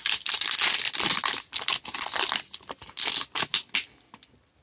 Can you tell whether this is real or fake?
real